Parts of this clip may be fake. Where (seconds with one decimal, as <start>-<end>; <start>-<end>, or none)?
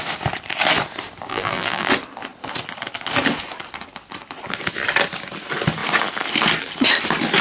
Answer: 1.3-1.9